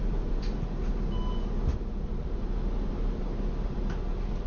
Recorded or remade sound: recorded